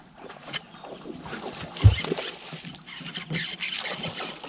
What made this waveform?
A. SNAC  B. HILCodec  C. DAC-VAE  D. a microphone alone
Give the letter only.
D